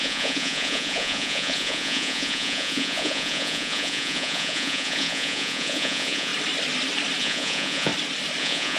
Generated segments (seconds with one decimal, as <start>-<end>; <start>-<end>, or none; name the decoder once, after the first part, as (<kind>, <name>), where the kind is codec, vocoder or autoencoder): 0.0-6.3 (vocoder, Vocos); 7.2-7.9; 8.4-8.8